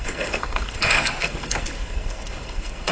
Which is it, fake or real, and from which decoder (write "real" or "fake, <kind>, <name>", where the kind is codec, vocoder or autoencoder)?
fake, codec, SNAC